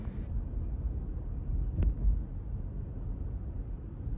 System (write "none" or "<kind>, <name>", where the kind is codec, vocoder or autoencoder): none